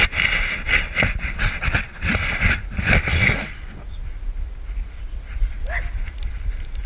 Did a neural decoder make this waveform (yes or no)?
no